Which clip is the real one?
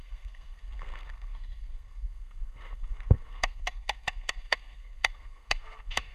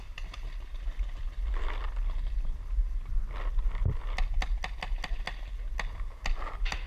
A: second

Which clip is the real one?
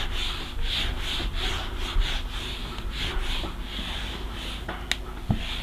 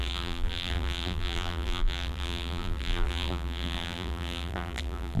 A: first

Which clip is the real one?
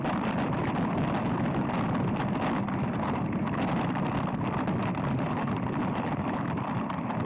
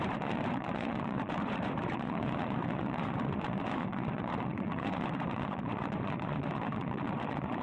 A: first